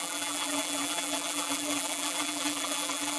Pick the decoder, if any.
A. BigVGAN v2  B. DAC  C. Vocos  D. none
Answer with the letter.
A